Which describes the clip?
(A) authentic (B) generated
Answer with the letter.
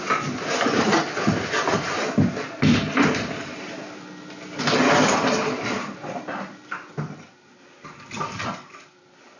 A